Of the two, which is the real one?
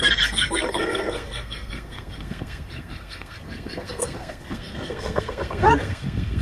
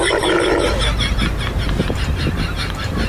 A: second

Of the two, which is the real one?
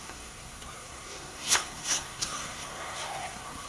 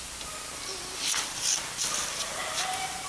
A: second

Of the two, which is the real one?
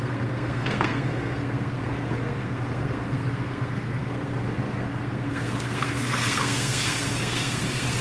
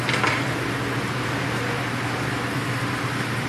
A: second